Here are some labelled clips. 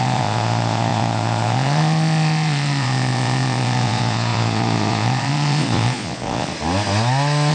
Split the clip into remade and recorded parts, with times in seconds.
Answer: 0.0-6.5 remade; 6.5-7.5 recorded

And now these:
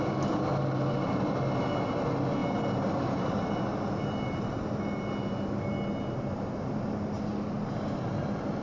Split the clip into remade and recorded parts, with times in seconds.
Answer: 0.0-0.5 recorded; 0.5-1.2 remade; 1.2-8.6 recorded

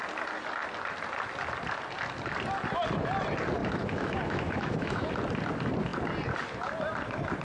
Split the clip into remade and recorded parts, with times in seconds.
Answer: 0.0-3.6 recorded; 3.6-5.1 remade; 5.1-7.4 recorded

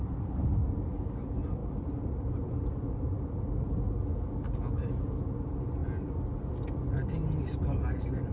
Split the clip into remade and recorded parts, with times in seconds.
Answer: 0.0-1.6 recorded; 1.6-3.3 remade; 3.3-5.8 recorded; 5.8-6.5 remade; 6.5-8.3 recorded

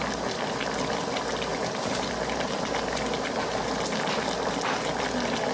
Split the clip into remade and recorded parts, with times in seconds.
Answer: 0.0-1.5 recorded; 1.5-3.0 remade; 3.0-5.5 recorded

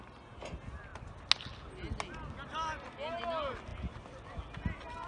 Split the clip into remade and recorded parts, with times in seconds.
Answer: 0.0-5.1 recorded